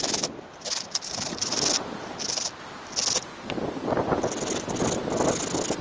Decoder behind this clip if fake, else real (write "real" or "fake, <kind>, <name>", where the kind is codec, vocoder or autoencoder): real